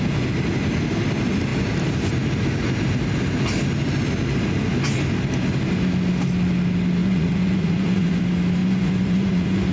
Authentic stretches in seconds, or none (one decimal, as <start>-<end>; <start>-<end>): 0.0-7.0; 8.2-8.6